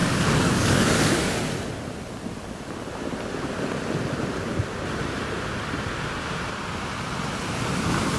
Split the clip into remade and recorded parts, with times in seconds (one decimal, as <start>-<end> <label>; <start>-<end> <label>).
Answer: 0.0-1.4 remade; 1.4-8.2 recorded